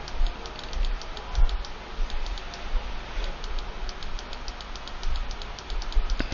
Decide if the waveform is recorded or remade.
recorded